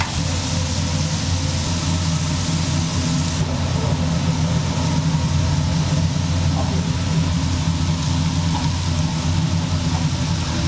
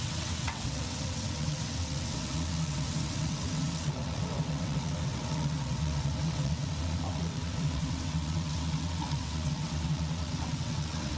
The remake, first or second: second